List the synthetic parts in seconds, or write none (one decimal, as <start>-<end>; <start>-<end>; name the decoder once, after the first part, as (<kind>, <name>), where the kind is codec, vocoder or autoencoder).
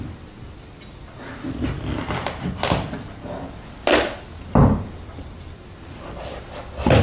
none